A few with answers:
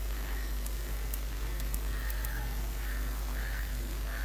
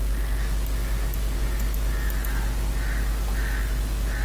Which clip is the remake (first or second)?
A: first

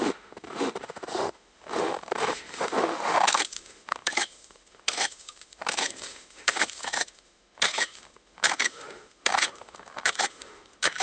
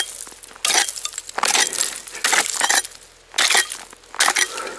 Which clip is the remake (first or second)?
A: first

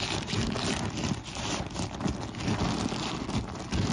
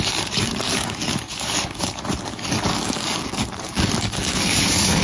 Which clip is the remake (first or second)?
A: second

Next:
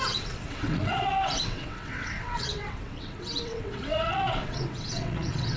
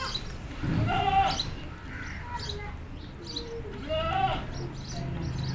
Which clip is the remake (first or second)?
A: first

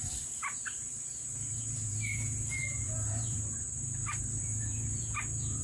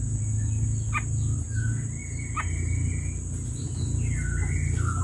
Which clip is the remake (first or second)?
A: first